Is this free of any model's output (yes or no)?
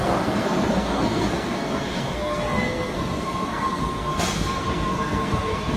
no